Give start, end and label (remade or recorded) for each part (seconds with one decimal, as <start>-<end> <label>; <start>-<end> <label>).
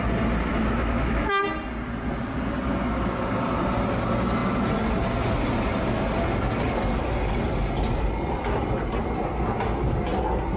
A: 0.0-0.5 recorded; 0.5-1.4 remade; 1.4-10.6 recorded